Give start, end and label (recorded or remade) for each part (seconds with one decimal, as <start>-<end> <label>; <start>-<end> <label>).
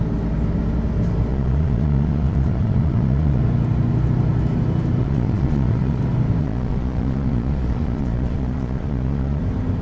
0.0-1.3 recorded; 1.3-3.4 remade; 3.4-5.0 recorded; 5.0-6.0 remade; 6.0-6.4 recorded; 6.4-9.4 remade; 9.4-9.8 recorded